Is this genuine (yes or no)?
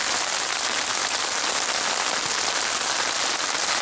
yes